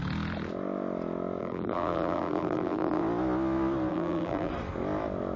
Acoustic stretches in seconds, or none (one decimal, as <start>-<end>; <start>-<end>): 0.0-1.4; 3.0-3.9; 4.5-5.4